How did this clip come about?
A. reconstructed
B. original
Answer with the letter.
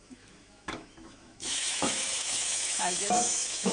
A